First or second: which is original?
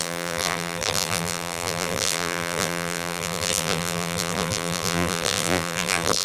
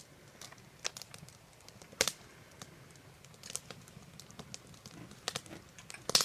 second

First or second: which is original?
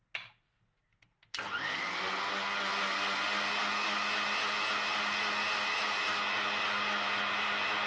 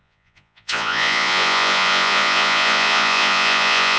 first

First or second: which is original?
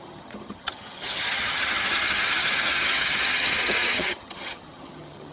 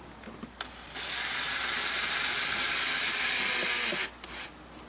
second